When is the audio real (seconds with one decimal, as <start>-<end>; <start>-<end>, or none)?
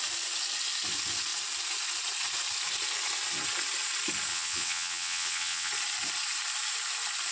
0.0-4.3; 5.7-7.3